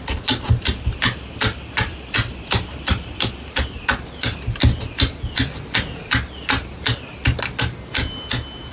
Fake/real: real